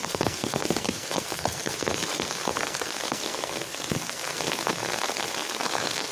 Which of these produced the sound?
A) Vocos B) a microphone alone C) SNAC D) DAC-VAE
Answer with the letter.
C